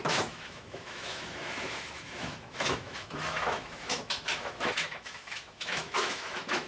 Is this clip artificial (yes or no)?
yes